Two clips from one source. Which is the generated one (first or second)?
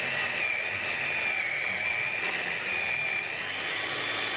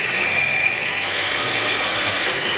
second